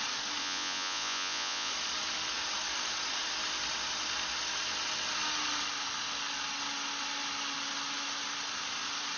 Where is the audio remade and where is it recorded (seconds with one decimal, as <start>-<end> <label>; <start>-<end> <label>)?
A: 0.0-0.4 recorded; 0.4-1.7 remade; 1.7-9.2 recorded

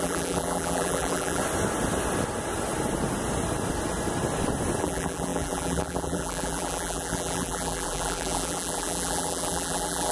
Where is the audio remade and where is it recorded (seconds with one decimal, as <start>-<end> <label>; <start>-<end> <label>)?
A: 0.0-1.4 remade; 1.4-4.8 recorded; 4.8-10.1 remade